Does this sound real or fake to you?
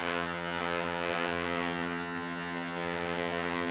fake